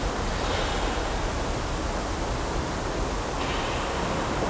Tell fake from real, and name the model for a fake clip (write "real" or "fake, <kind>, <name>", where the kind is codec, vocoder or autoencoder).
real